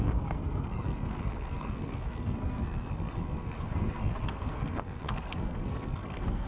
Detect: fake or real fake